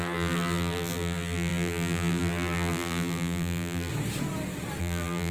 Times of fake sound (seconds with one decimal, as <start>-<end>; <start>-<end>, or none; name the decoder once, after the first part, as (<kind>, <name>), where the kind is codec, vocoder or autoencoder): 0.0-3.9 (vocoder, BigVGAN v2); 4.8-5.3